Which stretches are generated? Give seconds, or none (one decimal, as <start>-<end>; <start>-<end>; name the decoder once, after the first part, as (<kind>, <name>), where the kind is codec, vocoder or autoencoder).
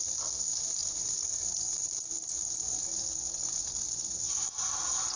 none